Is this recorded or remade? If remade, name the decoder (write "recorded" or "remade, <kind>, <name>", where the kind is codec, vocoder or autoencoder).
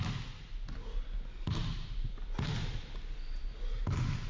recorded